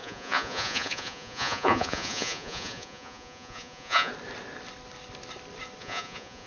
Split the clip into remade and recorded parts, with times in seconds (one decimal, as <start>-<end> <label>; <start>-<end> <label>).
0.0-4.1 remade; 4.1-5.8 recorded; 5.8-6.5 remade